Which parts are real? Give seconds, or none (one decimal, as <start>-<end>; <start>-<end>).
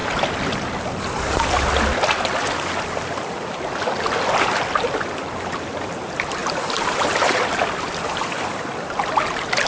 0.0-9.7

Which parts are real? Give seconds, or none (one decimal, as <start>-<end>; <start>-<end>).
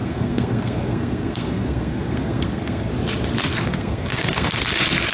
2.9-3.5; 4.6-5.1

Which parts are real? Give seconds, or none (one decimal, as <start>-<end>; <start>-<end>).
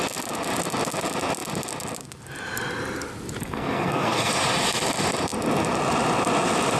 0.0-3.4; 4.3-6.8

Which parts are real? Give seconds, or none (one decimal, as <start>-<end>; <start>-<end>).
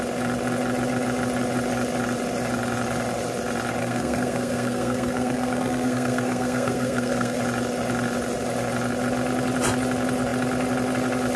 0.0-3.8; 7.4-11.4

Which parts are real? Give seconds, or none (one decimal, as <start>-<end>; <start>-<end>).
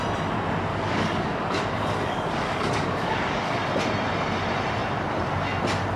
0.0-0.7; 3.6-6.0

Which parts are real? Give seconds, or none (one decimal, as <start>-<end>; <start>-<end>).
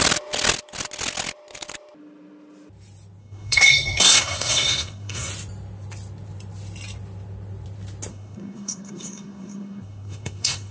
0.0-3.2; 5.3-8.1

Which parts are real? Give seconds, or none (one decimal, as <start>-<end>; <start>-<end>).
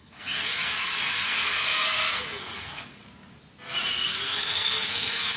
3.0-3.9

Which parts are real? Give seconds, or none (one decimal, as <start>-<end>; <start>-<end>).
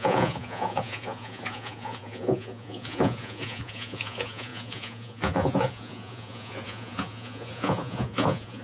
none